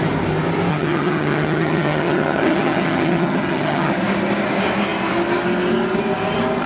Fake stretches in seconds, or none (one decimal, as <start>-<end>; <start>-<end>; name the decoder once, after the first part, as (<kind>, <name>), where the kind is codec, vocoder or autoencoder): 0.7-3.9 (vocoder, HiFi-GAN)